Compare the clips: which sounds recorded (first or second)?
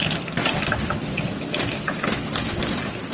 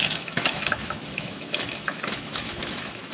first